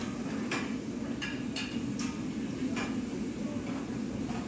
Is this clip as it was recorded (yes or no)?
yes